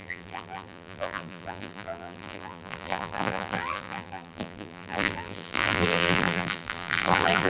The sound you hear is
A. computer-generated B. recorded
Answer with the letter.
A